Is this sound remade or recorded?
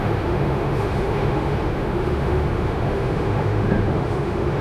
remade